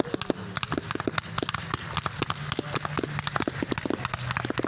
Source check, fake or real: real